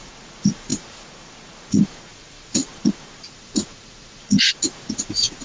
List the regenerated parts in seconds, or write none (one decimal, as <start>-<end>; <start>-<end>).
0.0-5.4